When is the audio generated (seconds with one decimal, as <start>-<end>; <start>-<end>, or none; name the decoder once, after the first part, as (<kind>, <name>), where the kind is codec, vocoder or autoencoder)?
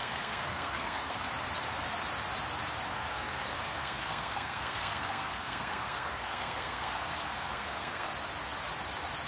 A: 0.0-1.3 (codec, SNAC); 2.9-8.1